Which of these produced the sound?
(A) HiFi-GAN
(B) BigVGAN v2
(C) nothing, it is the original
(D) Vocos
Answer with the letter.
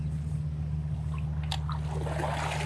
C